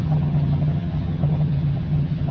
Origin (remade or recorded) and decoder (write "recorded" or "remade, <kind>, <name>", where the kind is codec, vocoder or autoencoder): remade, vocoder, HiFi-GAN